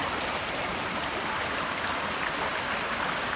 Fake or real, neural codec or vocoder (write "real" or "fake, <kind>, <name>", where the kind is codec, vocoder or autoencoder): real